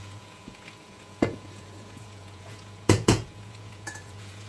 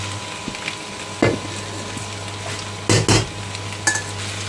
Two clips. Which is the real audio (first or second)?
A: second